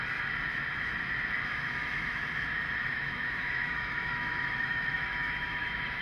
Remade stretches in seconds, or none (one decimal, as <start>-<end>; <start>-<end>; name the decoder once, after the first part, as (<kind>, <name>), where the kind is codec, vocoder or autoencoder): 1.5-2.2 (autoencoder, DAC-VAE); 2.8-6.0